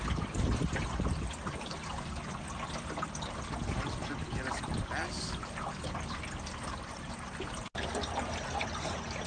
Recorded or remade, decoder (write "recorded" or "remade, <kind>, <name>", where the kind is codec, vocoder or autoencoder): recorded